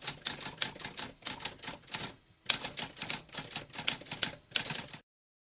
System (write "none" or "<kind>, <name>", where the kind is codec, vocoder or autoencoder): none